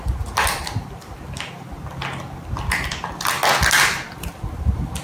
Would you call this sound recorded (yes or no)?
yes